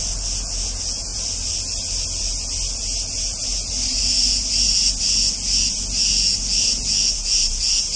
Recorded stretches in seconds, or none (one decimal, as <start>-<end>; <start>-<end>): 0.0-8.0